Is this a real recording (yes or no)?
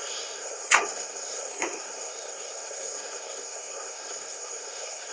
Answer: no